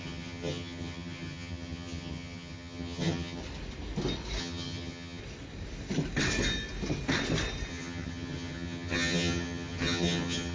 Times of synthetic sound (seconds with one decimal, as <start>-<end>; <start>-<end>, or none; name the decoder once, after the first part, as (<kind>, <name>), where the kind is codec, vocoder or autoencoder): 0.0-3.4 (vocoder, HiFi-GAN); 4.4-5.2; 7.7-10.5